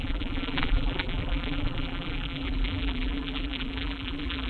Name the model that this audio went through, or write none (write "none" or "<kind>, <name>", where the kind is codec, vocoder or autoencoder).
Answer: vocoder, BigVGAN v2